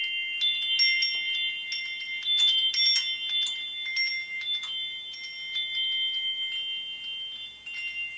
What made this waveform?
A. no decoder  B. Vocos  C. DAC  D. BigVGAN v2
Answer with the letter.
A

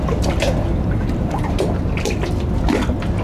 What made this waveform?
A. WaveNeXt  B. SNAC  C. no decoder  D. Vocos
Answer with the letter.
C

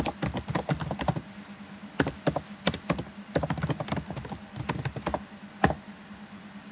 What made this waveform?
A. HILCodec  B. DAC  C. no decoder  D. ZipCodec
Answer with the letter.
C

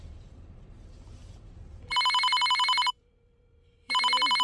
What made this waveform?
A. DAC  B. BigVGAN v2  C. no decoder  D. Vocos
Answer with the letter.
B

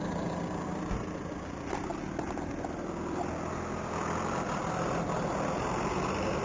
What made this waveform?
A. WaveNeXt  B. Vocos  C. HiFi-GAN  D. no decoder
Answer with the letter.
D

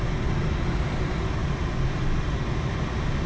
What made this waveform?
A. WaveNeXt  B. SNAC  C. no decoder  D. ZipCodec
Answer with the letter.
C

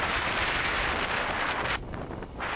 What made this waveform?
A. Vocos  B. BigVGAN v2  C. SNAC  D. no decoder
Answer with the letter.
D